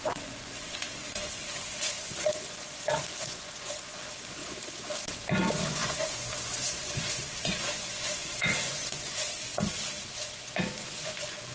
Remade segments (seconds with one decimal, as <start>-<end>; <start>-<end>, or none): 0.0-4.4; 5.2-9.5; 10.0-11.5

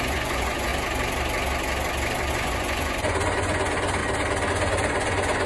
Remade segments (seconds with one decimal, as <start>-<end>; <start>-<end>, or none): 0.0-0.7; 2.3-4.0; 4.5-5.5

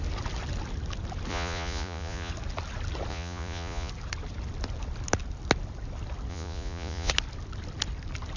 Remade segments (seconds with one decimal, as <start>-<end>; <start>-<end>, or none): 1.3-2.3; 3.1-3.9; 6.3-7.1

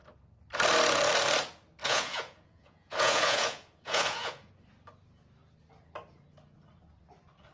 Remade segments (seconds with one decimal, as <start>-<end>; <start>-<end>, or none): 1.8-4.5